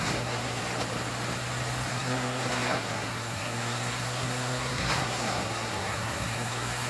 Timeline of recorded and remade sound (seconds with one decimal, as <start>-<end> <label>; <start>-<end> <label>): 0.0-0.6 remade; 0.6-1.9 recorded; 1.9-6.9 remade